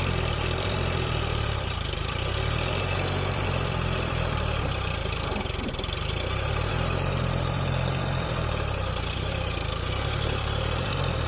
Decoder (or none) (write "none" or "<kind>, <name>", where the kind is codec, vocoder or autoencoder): vocoder, BigVGAN v2